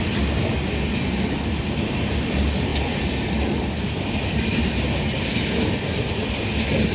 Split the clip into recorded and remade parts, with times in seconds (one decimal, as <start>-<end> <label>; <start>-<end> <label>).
0.0-6.9 recorded